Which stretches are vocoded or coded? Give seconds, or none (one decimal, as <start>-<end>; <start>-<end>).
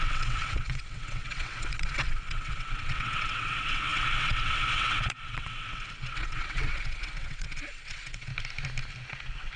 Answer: 0.0-8.3